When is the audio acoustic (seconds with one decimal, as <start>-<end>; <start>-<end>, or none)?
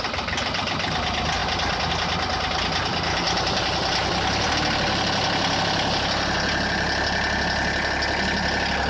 0.0-8.9